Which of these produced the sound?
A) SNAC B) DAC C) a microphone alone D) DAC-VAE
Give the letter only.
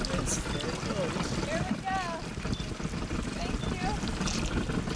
C